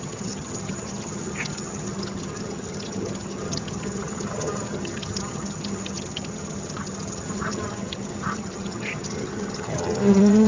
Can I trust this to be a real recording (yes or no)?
no